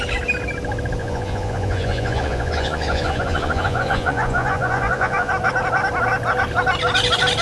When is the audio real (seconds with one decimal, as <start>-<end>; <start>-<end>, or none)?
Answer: 0.0-1.0; 5.3-7.4